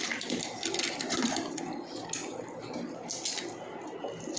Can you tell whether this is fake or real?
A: real